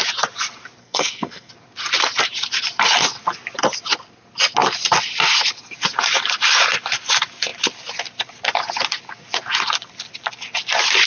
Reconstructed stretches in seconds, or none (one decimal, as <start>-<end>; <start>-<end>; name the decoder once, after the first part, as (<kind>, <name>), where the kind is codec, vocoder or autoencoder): 0.8-1.5 (codec, SNAC)